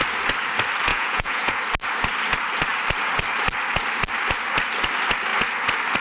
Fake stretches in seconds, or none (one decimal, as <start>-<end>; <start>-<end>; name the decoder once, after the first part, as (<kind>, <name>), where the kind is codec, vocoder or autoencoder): 0.9-1.6 (vocoder, Vocos)